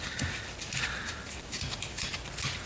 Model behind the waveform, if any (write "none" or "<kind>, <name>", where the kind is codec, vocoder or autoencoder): none